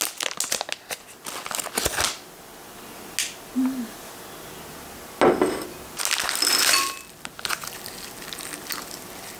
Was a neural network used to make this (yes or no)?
no